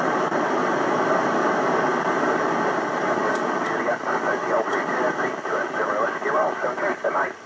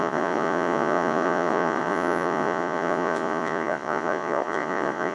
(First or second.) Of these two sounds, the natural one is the first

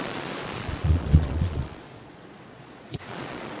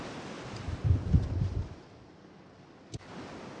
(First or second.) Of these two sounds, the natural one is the second